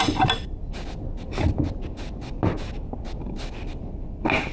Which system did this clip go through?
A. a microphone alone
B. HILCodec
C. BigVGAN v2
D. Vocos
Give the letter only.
A